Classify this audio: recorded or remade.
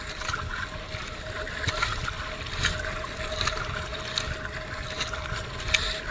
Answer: recorded